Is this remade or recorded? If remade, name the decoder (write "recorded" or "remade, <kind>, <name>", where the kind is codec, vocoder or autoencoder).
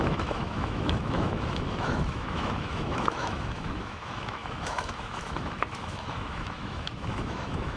remade, autoencoder, DAC-VAE